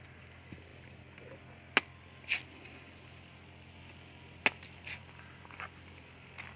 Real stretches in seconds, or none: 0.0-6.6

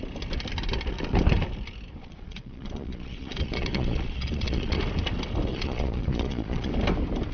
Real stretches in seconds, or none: 0.0-2.0; 4.8-5.5; 6.7-7.3

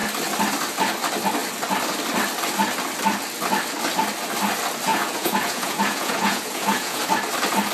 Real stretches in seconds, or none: 0.0-4.9; 7.0-7.7

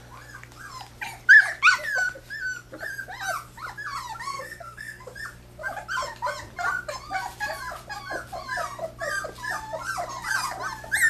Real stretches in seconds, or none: 0.0-4.3; 5.0-11.1

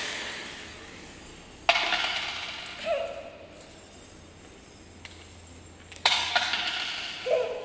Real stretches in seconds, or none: 1.3-5.9; 6.5-7.6

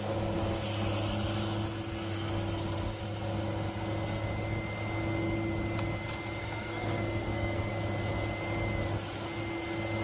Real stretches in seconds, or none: 0.0-6.4; 7.7-10.0